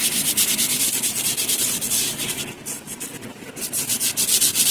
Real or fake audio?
real